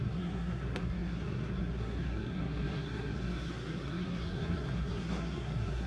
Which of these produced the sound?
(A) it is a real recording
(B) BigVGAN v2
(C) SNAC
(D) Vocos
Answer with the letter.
C